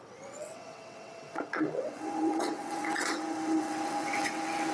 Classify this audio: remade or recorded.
remade